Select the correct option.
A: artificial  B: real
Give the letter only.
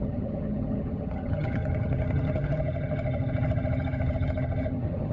A